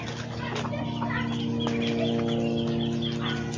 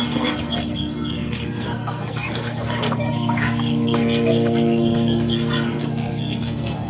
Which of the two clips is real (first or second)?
first